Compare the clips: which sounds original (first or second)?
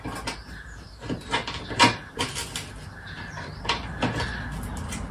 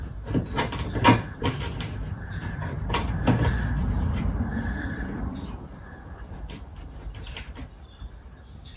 first